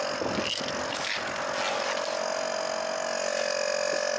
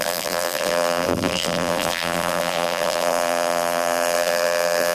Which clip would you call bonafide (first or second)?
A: first